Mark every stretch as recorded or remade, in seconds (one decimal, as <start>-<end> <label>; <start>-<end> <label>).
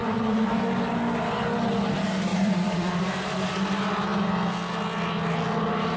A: 0.0-0.6 remade; 0.6-2.3 recorded; 2.3-3.0 remade; 3.0-6.0 recorded